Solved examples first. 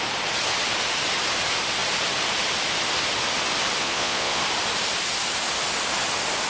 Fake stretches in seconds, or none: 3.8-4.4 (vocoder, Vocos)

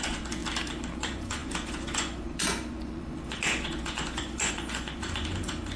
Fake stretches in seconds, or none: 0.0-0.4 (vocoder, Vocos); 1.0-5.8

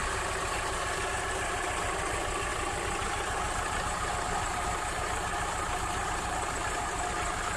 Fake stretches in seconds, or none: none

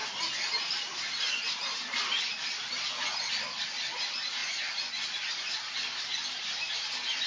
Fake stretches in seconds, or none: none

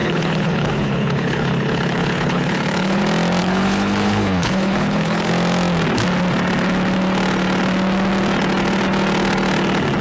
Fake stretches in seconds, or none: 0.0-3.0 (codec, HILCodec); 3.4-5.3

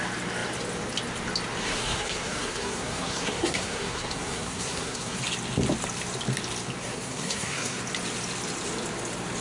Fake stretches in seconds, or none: 1.6-5.2 (codec, SNAC); 6.8-7.8

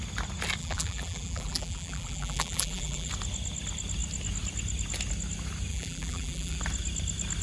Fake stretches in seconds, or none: 0.6-3.1 (vocoder, BigVGAN v2); 5.7-6.6